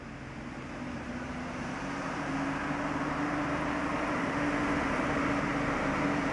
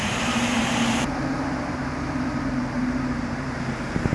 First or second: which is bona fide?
first